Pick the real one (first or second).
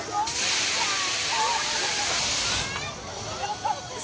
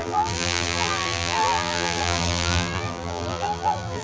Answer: first